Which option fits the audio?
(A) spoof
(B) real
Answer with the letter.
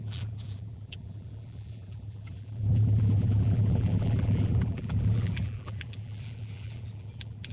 A